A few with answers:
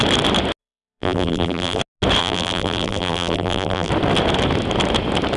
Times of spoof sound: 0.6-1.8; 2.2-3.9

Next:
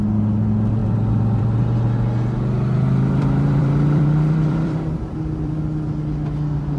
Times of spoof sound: 3.2-5.6

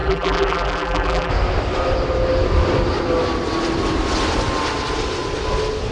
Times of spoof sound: 0.0-1.3

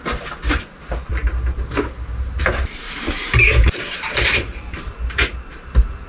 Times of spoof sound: 0.0-1.1; 2.4-6.1